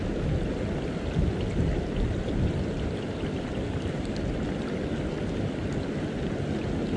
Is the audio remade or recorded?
recorded